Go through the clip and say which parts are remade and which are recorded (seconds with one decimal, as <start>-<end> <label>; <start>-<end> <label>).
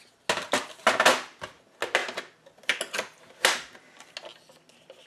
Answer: 0.0-5.1 recorded